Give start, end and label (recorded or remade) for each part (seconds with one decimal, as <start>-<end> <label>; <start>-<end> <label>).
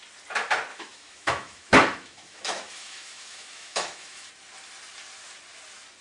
0.0-0.7 recorded; 0.7-4.3 remade; 4.3-6.0 recorded